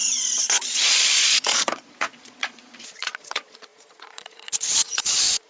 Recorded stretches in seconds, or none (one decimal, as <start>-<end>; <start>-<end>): none

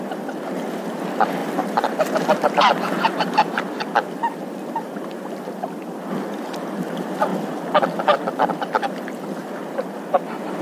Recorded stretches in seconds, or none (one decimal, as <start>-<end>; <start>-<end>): 0.0-10.6

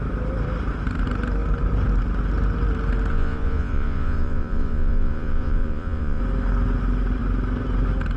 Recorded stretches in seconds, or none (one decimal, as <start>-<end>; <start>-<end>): 0.0-3.1; 6.2-8.2

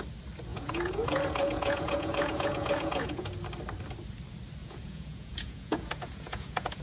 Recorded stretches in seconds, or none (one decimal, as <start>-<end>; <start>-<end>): 0.0-0.5; 3.3-4.6

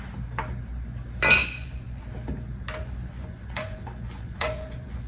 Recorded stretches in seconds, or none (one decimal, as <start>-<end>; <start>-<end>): 0.0-1.4; 2.0-2.8

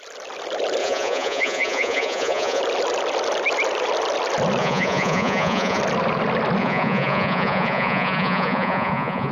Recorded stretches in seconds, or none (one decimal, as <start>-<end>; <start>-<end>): 0.0-0.8; 2.6-4.6; 5.8-6.6